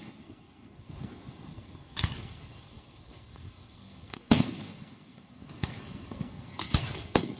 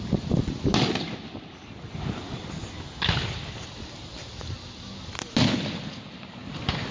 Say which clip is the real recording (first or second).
second